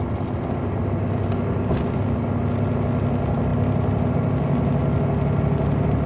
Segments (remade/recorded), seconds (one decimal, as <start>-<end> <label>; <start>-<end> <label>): 0.0-6.1 recorded